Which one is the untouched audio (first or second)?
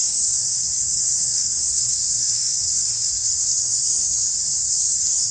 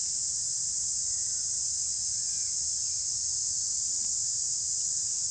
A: second